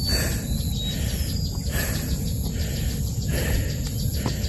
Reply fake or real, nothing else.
real